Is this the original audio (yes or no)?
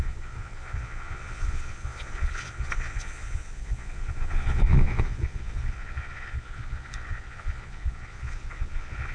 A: no